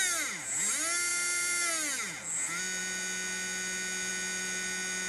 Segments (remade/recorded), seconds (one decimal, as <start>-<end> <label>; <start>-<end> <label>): 0.0-1.1 recorded; 1.1-1.7 remade; 1.7-5.1 recorded